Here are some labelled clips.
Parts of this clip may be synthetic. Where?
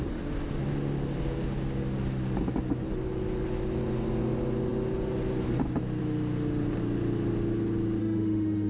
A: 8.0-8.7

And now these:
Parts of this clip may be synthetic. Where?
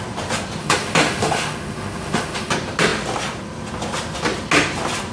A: 0.6-2.5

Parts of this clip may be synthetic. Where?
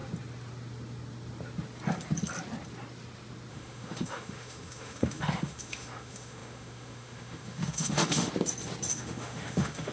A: 3.5-8.3; 8.9-9.9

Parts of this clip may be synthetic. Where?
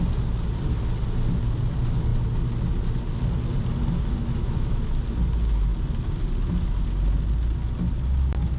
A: 4.2-4.8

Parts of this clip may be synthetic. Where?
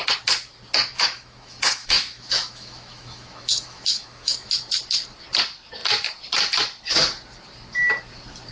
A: 0.9-4.5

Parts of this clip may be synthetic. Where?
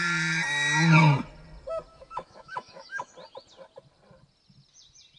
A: 1.9-3.1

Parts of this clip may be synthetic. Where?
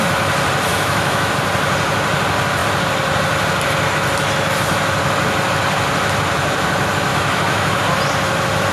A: 0.7-1.3; 7.1-7.8